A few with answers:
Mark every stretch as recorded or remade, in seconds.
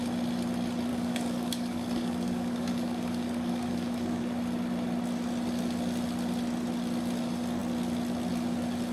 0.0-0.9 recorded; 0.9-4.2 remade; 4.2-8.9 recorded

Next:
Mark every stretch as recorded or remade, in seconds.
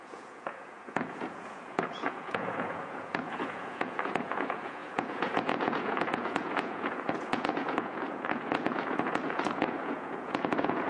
0.0-10.9 remade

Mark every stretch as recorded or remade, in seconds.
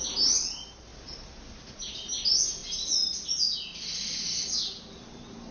0.0-0.9 remade; 0.9-1.8 recorded; 1.8-2.6 remade; 2.6-4.9 recorded; 4.9-5.5 remade